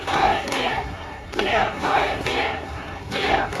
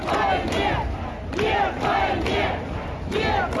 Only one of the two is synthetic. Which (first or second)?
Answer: first